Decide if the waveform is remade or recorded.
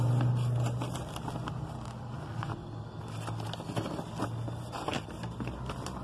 recorded